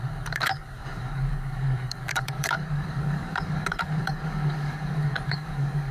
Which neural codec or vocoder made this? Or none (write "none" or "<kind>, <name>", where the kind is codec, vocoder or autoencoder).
codec, DAC